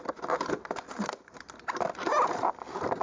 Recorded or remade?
recorded